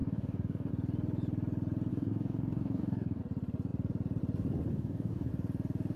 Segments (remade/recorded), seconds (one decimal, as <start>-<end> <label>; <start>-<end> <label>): 0.0-0.7 remade; 0.7-1.9 recorded; 1.9-3.2 remade; 3.2-4.7 recorded; 4.7-5.3 remade; 5.3-6.0 recorded